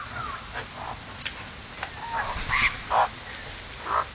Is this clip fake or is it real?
real